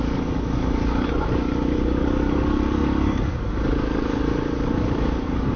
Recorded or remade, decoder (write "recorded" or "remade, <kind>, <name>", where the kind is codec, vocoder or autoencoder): remade, codec, DAC